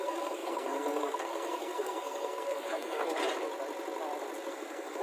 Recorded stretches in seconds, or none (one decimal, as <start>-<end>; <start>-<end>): 3.0-4.5